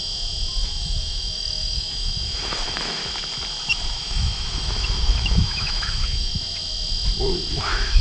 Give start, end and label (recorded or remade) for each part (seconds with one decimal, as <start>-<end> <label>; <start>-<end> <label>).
0.0-0.6 recorded; 0.6-3.0 remade; 3.0-3.9 recorded; 3.9-6.3 remade; 6.3-7.5 recorded; 7.5-8.0 remade